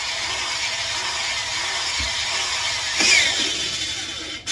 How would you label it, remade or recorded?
recorded